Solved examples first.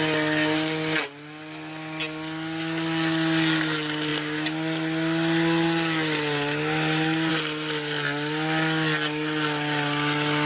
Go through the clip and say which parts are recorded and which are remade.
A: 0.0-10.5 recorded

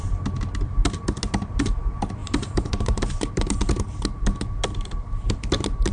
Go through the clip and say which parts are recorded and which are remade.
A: 0.0-2.2 recorded; 2.2-3.6 remade; 3.6-5.9 recorded